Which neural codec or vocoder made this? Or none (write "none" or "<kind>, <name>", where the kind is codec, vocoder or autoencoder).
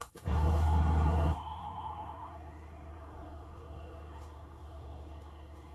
codec, SNAC